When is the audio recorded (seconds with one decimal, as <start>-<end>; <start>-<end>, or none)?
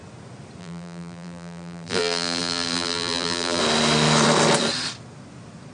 0.0-0.6; 3.6-5.7